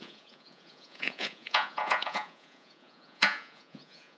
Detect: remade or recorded remade